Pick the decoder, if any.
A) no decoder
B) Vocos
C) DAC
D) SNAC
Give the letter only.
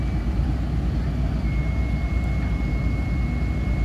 A